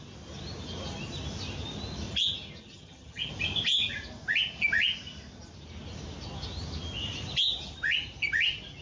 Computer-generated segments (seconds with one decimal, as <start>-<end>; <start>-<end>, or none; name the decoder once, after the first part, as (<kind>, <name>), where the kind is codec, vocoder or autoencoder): 2.6-3.3 (vocoder, HiFi-GAN)